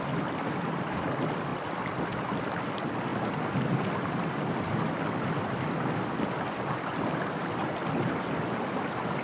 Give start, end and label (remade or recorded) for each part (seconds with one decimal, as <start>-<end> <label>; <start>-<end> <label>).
0.0-9.2 recorded